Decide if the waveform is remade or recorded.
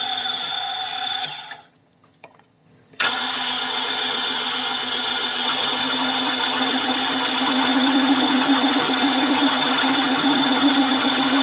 remade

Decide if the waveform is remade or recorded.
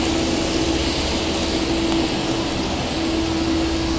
recorded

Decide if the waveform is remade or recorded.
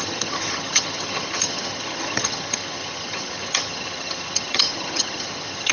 remade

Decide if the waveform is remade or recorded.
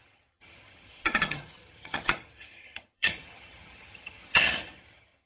remade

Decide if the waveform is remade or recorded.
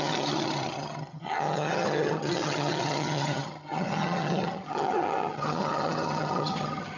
remade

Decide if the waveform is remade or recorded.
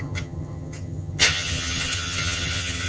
remade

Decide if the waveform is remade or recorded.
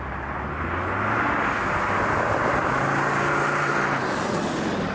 recorded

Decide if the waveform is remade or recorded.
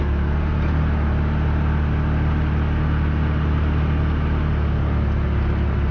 recorded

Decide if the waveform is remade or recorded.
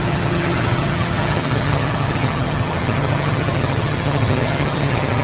remade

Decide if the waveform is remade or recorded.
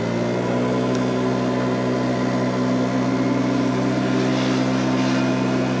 recorded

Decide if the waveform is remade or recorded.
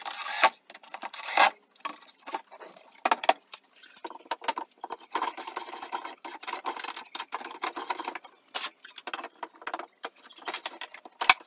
recorded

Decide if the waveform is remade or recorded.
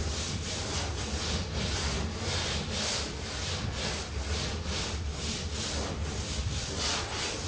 recorded